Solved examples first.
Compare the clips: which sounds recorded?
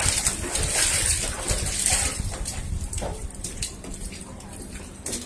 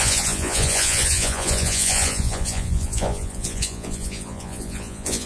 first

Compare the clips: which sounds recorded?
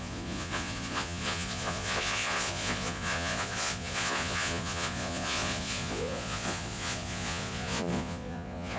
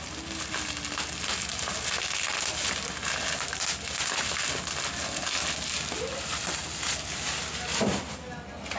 second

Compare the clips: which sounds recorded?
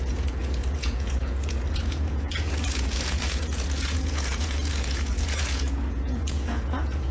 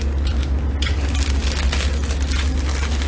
second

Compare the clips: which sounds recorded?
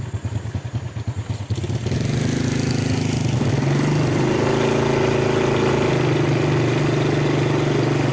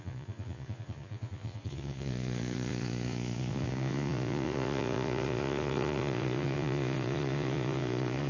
first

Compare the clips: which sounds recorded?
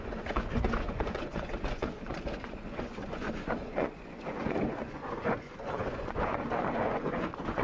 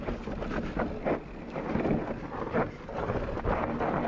second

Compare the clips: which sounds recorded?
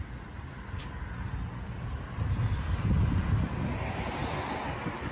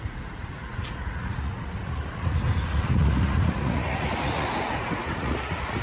first